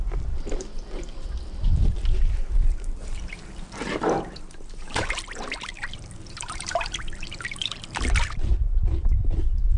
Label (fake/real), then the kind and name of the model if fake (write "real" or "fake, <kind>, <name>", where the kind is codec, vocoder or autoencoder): fake, vocoder, BigVGAN v2